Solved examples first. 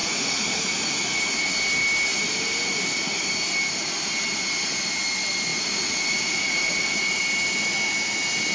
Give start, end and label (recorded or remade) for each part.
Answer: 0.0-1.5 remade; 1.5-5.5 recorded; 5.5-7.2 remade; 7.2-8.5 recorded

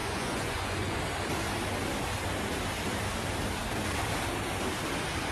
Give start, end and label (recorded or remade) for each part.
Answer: 0.0-1.0 remade; 1.0-5.3 recorded

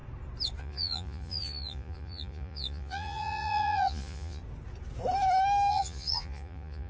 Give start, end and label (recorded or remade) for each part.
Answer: 0.0-0.6 recorded; 0.6-4.4 remade; 4.4-5.7 recorded; 5.7-6.9 remade

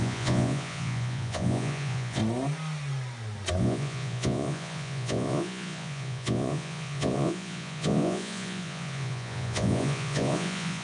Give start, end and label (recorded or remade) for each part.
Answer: 0.0-2.2 remade; 2.2-3.6 recorded; 3.6-10.8 remade